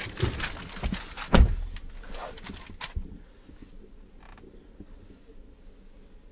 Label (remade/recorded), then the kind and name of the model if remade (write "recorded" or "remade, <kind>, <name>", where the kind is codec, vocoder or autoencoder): recorded